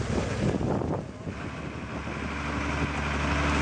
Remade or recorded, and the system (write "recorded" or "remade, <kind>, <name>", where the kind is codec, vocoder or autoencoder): recorded